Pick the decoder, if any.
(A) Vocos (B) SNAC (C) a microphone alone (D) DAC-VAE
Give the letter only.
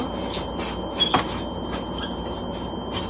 C